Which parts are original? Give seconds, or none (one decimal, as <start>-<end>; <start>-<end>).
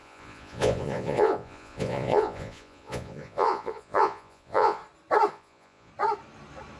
4.8-5.3; 5.9-6.8